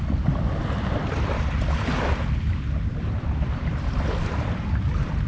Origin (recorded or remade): recorded